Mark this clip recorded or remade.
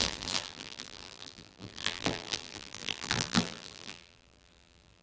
remade